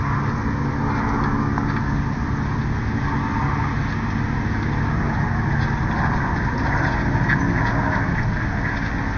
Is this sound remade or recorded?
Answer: recorded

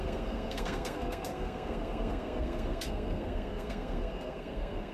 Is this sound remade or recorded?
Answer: remade